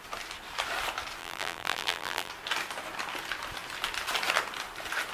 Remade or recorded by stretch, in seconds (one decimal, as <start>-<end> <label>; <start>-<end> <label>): 0.0-1.2 recorded; 1.2-2.3 remade; 2.3-5.1 recorded